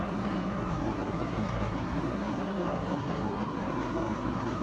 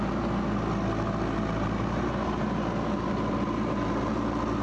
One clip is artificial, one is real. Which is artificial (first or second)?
first